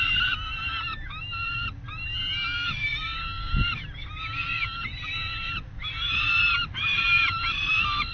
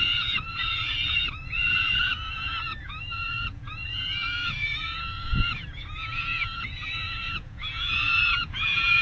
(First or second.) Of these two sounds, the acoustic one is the first